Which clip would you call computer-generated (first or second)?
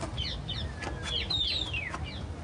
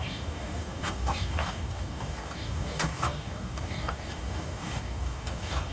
second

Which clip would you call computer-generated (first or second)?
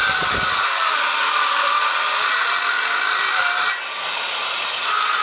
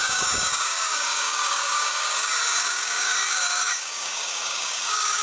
second